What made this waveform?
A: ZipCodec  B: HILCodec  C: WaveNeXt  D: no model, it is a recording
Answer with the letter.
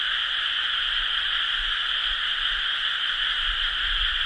D